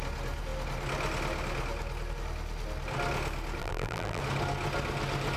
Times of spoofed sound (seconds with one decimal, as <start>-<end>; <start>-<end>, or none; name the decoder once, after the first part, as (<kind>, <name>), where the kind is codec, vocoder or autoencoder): 3.6-4.2 (vocoder, BigVGAN v2)